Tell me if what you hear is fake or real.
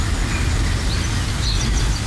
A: real